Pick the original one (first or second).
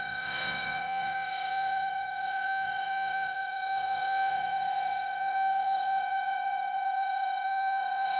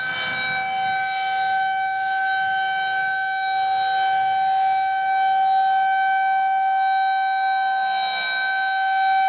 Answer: second